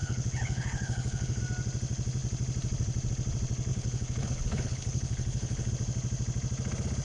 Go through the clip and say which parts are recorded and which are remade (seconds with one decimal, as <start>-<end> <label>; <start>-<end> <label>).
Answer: 0.0-1.4 remade; 1.4-3.7 recorded; 3.7-5.7 remade; 5.7-7.0 recorded